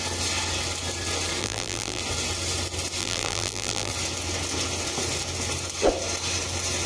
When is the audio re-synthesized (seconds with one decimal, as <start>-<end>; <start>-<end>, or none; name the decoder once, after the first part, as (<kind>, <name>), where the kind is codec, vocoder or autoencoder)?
1.4-2.0 (vocoder, BigVGAN v2); 3.0-3.9